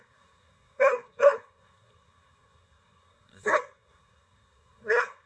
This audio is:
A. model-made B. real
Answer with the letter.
A